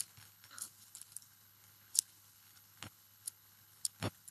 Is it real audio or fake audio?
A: fake